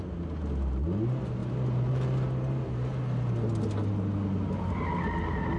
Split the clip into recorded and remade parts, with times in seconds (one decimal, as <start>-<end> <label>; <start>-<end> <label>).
0.0-5.6 recorded